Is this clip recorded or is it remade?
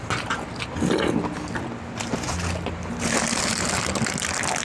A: recorded